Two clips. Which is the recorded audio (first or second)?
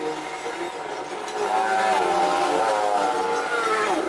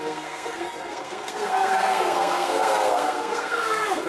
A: first